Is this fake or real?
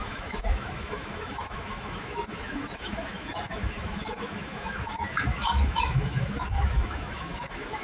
fake